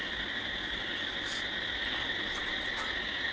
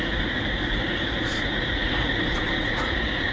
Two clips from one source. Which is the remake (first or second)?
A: second